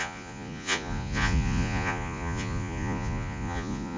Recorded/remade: remade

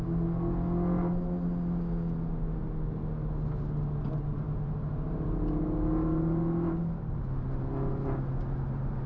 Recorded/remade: recorded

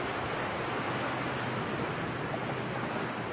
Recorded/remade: recorded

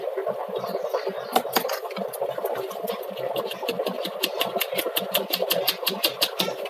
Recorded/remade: recorded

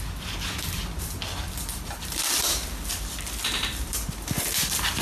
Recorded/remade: remade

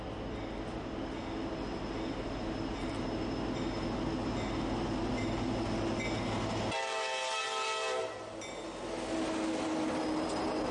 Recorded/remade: recorded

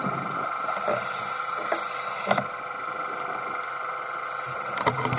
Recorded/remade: recorded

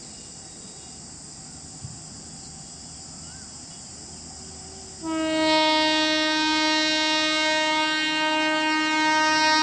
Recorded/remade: recorded